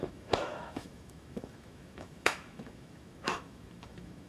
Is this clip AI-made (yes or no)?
yes